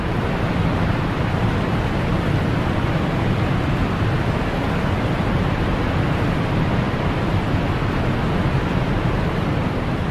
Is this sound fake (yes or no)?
no